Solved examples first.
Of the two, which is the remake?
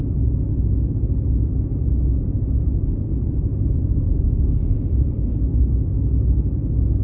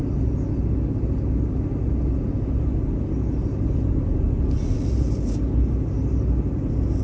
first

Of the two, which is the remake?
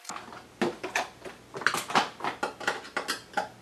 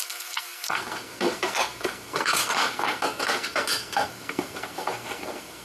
second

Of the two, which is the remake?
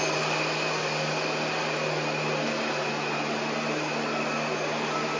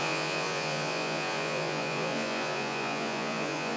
second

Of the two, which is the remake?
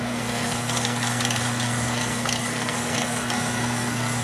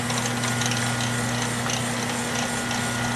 first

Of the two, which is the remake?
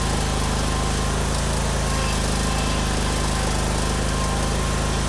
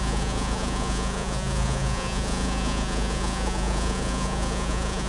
second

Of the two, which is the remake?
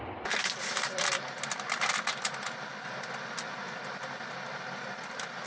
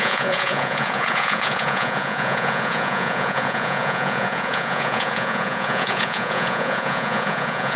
second